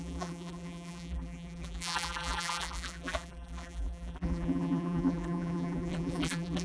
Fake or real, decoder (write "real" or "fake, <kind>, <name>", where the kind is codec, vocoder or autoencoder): fake, vocoder, BigVGAN v2